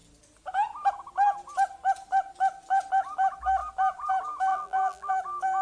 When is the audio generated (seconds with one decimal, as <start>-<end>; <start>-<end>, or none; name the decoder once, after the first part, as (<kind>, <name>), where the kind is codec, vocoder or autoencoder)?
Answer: 4.5-5.1 (vocoder, BigVGAN v2)